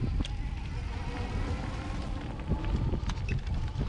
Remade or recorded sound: recorded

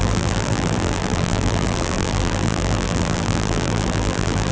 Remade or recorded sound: remade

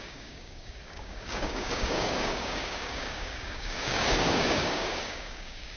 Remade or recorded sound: remade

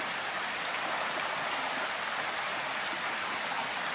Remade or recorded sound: recorded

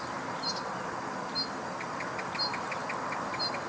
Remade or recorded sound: recorded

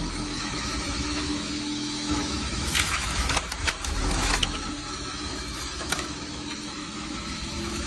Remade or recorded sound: remade